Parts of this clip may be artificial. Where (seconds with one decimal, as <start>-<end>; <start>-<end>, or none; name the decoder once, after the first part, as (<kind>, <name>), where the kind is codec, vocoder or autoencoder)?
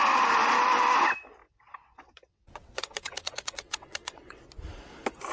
1.4-4.4 (vocoder, WaveNeXt)